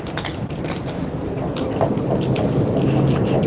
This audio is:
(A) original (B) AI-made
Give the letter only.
A